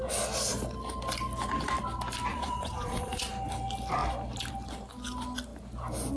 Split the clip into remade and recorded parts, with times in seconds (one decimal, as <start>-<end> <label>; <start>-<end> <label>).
0.0-2.3 recorded; 2.3-3.3 remade; 3.3-6.2 recorded